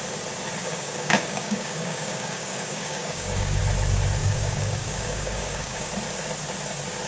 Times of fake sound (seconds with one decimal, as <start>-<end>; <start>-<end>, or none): 0.6-3.6; 4.2-5.9